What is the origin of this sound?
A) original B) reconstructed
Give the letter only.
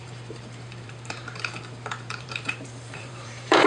B